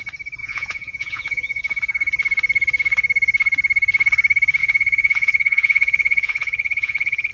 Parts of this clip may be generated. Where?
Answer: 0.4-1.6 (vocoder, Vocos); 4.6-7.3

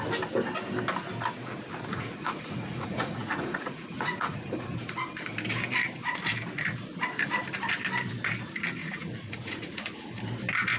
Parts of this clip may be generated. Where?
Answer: 1.9-4.8 (vocoder, Vocos); 8.8-10.2

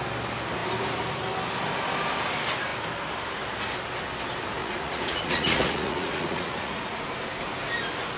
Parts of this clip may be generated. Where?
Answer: 4.6-7.0 (vocoder, Vocos)

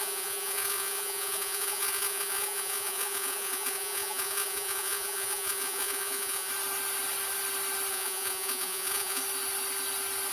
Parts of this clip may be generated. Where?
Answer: 0.0-6.5 (vocoder, Vocos); 7.9-9.2

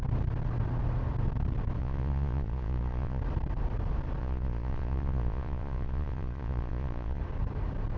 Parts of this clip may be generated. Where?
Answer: 1.8-3.2 (vocoder, Vocos); 4.2-7.2

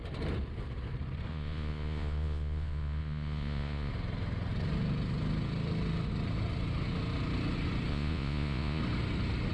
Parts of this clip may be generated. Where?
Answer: 1.3-3.9 (vocoder, Vocos); 7.9-8.8